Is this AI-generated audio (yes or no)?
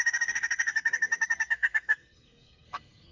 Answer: yes